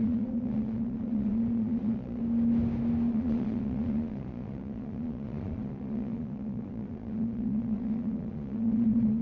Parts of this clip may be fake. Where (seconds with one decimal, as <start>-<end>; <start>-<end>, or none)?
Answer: 0.0-2.2; 3.1-9.2